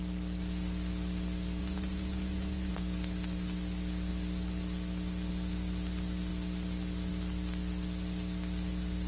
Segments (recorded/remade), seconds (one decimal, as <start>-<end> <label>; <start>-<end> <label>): 0.0-1.6 recorded; 1.6-2.7 remade; 2.7-9.1 recorded